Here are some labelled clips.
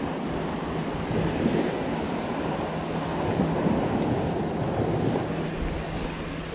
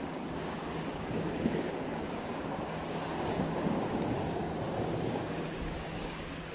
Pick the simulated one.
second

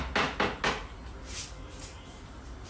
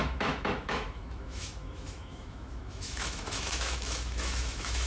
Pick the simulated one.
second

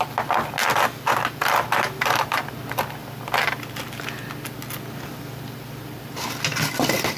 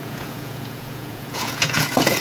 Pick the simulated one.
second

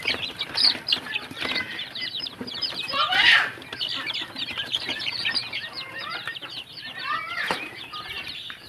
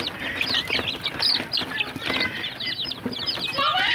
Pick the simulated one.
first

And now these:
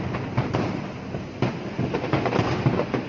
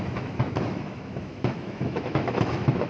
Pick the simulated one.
second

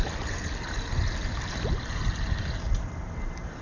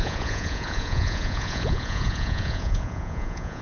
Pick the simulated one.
second